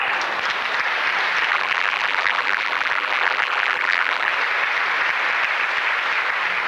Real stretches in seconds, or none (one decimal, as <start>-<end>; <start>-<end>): 0.0-1.5; 4.3-6.7